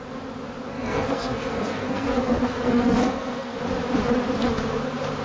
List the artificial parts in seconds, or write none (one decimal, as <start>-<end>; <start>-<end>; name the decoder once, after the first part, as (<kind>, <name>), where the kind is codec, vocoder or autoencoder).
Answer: 0.7-3.6 (codec, SNAC)